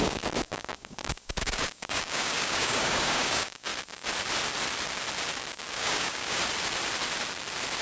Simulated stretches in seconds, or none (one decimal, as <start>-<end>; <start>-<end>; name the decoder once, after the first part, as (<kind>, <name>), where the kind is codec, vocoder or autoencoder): 0.0-3.7 (codec, DAC); 5.7-6.4